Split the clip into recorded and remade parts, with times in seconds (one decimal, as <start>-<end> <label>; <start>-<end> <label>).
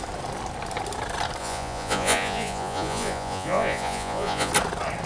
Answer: 0.0-1.4 recorded; 1.4-4.5 remade; 4.5-5.1 recorded